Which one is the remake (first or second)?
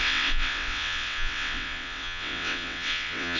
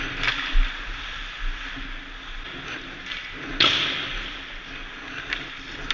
first